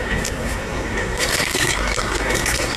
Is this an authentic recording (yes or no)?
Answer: no